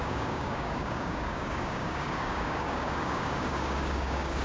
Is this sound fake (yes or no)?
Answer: yes